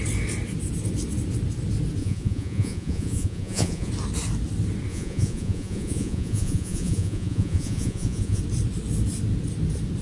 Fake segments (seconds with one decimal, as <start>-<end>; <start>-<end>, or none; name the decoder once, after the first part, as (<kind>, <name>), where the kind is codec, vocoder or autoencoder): 2.0-3.9 (vocoder, Vocos); 4.9-8.4